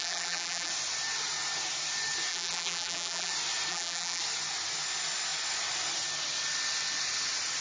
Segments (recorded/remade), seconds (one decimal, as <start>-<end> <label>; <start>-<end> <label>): 0.0-0.7 remade; 0.7-2.3 recorded; 2.3-3.3 remade; 3.3-3.7 recorded; 3.7-4.2 remade; 4.2-7.6 recorded